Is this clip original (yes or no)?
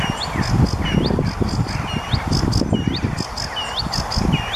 yes